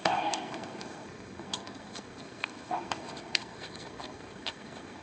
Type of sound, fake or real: fake